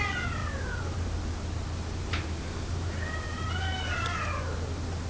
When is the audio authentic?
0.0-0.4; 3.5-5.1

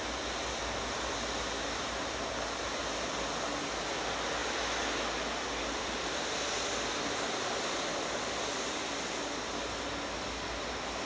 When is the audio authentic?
0.0-0.4; 2.3-4.4; 9.5-11.1

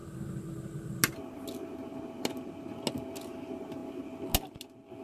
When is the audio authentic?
0.0-5.0

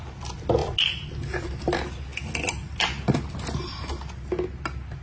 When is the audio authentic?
0.0-5.0

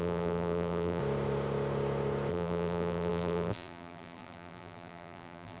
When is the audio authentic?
1.0-2.3

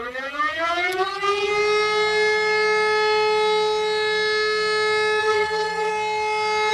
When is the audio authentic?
1.5-5.2; 5.9-6.7